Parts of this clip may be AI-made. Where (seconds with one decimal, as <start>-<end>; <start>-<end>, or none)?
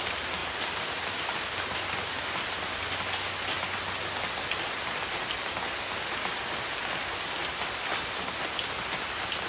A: 0.4-1.6